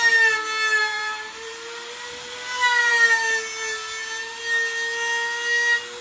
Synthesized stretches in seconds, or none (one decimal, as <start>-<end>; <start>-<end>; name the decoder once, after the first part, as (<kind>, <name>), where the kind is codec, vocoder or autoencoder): 0.8-4.4 (vocoder, BigVGAN v2)